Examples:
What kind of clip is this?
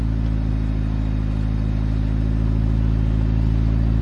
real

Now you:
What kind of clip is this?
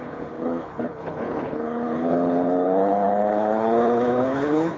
fake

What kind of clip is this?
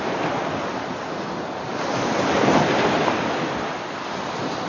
real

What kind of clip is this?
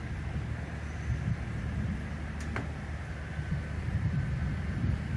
real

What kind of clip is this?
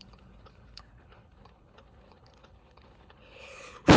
fake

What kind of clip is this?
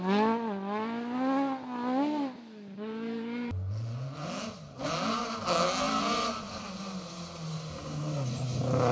real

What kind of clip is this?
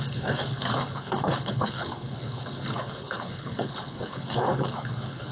fake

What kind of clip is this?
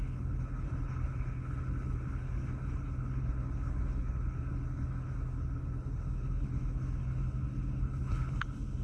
fake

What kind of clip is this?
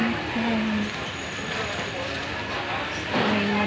real